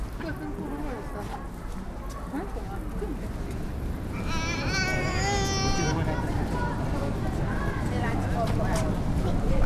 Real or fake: real